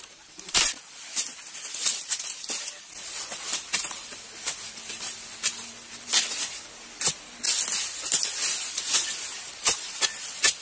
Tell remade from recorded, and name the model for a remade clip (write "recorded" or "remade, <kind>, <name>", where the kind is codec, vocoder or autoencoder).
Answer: remade, vocoder, BigVGAN v2